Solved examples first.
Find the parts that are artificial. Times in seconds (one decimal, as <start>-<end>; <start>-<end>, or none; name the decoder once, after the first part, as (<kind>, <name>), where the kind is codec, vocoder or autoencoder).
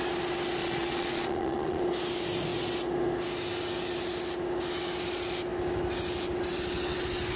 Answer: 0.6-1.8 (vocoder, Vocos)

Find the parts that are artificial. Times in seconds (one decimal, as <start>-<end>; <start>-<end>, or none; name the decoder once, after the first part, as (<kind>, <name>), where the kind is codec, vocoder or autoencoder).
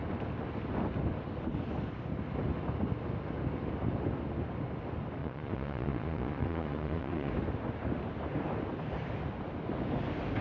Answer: 5.2-7.3 (vocoder, Vocos)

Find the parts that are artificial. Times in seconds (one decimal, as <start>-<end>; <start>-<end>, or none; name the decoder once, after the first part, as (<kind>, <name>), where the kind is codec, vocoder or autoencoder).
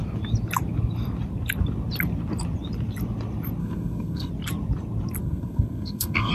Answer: 3.6-4.3 (codec, SNAC); 5.2-6.3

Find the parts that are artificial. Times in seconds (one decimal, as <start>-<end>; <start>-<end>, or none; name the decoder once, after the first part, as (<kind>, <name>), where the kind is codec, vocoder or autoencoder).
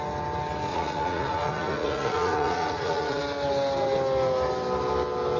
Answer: 0.7-3.2 (vocoder, Vocos)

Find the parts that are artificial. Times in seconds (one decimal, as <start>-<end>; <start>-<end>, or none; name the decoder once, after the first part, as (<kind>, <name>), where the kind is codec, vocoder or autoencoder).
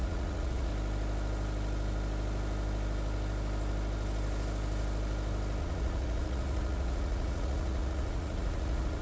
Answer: 0.0-0.7 (vocoder, Vocos); 5.6-9.0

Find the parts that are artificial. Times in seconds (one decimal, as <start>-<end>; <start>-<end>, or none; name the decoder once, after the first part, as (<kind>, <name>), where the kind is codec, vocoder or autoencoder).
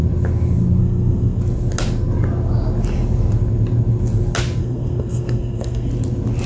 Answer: 0.8-1.4 (codec, SNAC); 4.6-5.9